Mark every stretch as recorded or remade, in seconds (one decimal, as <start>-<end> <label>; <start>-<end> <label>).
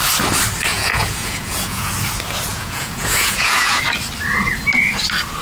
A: 0.0-0.7 recorded; 0.7-1.9 remade; 1.9-2.5 recorded; 2.5-3.8 remade; 3.8-5.4 recorded